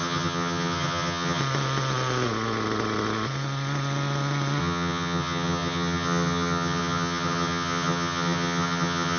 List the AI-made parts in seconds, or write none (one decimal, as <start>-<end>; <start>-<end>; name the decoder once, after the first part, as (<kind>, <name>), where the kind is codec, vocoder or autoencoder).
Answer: 0.0-1.4 (vocoder, HiFi-GAN); 4.6-9.2